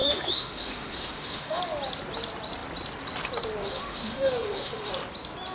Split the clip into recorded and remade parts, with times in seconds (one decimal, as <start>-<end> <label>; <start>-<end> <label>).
0.0-1.6 remade; 1.6-3.6 recorded; 3.6-4.9 remade; 4.9-5.5 recorded